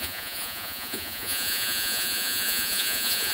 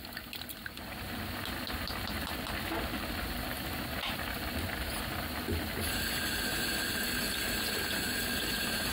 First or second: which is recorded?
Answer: second